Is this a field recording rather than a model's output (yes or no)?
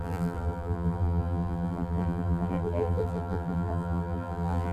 no